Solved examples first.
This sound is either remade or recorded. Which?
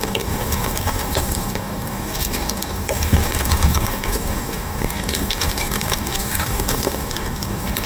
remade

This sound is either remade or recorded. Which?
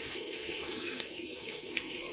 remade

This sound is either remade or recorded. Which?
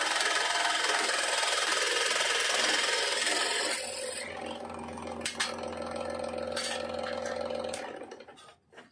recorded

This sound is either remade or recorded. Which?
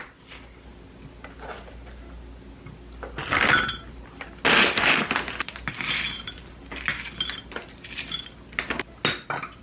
recorded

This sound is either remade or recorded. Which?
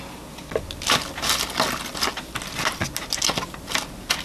recorded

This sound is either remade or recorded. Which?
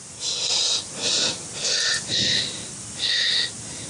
recorded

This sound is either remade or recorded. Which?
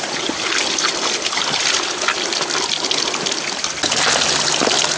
recorded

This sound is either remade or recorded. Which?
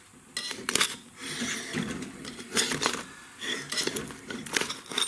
recorded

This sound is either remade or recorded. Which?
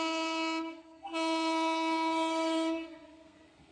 remade